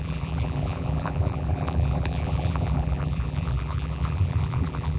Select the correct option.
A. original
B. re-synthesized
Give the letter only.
B